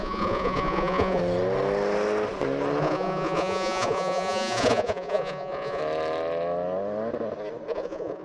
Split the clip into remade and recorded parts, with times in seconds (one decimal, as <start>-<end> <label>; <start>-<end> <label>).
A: 0.0-1.2 remade; 1.2-2.8 recorded; 2.8-5.8 remade; 5.8-7.7 recorded; 7.7-8.2 remade